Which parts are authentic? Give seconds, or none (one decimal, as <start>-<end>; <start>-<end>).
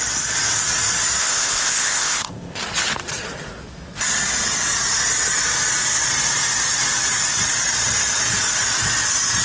0.0-1.2; 2.6-9.4